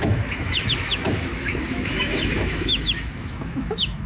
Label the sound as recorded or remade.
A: remade